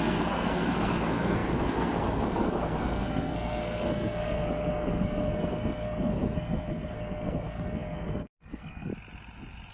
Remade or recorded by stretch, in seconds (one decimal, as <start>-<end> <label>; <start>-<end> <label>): 0.0-8.9 remade; 8.9-9.7 recorded